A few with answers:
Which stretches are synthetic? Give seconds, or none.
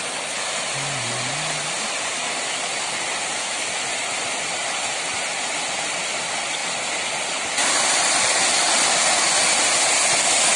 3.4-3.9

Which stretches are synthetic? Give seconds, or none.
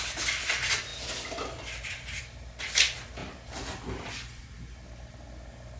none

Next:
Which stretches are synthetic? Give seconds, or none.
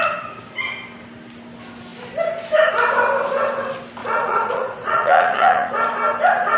4.0-5.7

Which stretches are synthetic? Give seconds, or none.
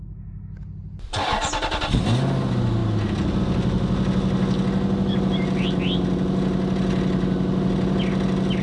none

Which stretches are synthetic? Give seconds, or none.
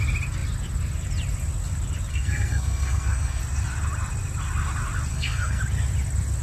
2.1-3.4; 5.1-5.6